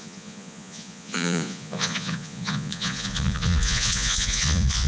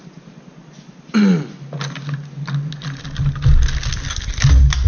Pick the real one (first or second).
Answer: second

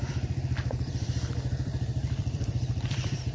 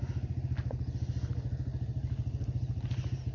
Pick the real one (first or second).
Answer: second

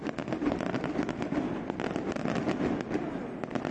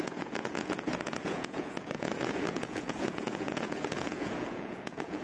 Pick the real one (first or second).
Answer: first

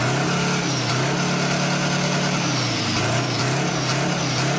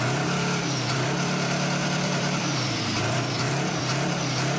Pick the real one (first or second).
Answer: first